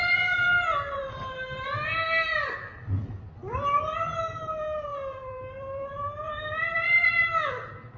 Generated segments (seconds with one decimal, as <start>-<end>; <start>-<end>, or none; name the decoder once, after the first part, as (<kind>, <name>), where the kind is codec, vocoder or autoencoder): 4.9-7.1 (vocoder, BigVGAN v2)